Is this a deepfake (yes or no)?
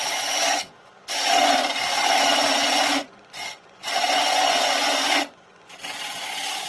yes